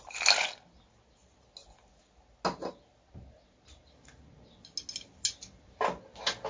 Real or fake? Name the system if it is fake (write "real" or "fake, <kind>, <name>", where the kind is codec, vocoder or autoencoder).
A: real